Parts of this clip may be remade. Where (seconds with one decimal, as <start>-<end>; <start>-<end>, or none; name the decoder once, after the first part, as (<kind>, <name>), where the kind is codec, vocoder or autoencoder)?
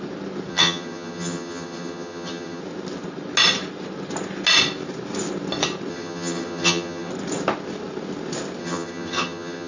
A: 0.5-2.6 (vocoder, HiFi-GAN); 5.9-7.1; 8.6-9.7